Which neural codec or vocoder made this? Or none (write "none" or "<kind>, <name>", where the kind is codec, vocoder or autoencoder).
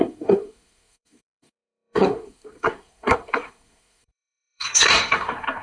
codec, SNAC